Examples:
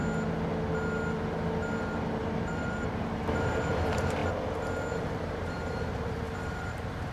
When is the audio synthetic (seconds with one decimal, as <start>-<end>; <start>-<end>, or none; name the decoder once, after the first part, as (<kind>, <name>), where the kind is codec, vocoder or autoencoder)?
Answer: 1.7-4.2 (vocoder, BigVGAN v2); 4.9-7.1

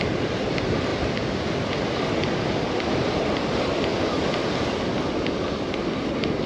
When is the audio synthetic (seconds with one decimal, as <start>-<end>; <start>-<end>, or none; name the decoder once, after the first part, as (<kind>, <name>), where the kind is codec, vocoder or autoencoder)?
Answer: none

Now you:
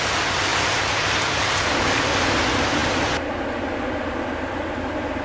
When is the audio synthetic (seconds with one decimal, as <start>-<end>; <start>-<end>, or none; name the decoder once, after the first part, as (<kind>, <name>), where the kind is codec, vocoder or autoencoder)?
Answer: 0.5-1.6 (vocoder, BigVGAN v2)

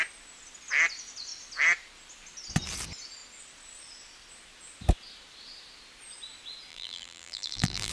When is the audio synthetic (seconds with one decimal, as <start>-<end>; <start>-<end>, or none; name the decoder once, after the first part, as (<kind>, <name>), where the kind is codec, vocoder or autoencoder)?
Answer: 6.7-7.9 (vocoder, BigVGAN v2)

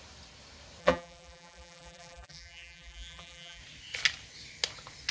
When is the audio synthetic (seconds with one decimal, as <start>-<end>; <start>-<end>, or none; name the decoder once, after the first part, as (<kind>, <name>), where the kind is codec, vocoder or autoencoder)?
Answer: 0.8-3.6 (vocoder, BigVGAN v2)

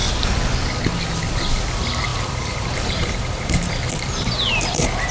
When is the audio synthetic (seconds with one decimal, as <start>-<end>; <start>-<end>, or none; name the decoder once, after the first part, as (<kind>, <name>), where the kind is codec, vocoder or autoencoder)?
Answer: 2.1-4.1 (vocoder, BigVGAN v2)